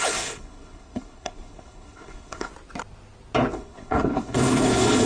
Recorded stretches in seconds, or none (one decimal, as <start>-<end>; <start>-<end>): 2.5-3.5